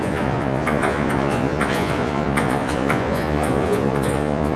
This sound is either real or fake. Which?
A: fake